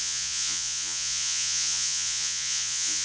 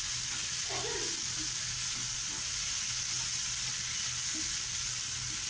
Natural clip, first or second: second